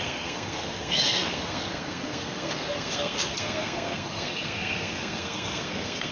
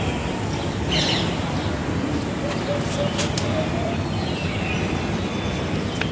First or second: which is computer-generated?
first